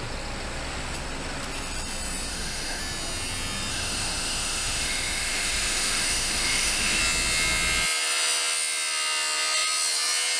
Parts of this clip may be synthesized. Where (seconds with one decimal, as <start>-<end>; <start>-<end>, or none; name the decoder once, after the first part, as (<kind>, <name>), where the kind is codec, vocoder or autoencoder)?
2.3-2.8 (autoencoder, DAC-VAE); 3.7-7.0